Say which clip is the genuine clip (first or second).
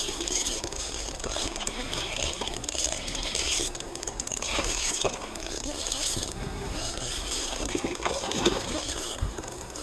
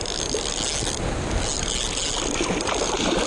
second